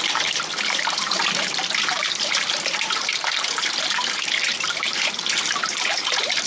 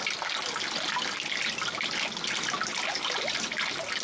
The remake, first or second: first